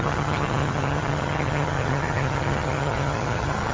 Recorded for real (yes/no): no